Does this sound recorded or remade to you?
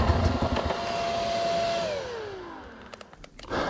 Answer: recorded